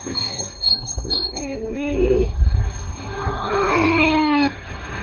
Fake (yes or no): yes